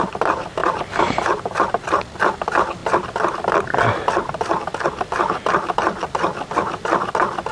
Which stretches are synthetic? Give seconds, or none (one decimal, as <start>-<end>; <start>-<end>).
0.0-0.6; 1.7-2.8; 7.1-7.5